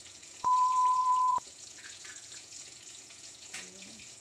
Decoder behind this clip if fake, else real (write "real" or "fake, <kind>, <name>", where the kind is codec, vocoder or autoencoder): fake, vocoder, Vocos